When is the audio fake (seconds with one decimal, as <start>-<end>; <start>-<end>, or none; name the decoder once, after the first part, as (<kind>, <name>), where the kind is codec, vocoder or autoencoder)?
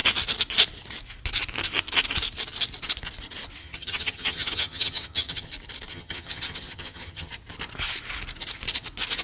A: 3.6-5.5 (vocoder, HiFi-GAN); 5.9-7.3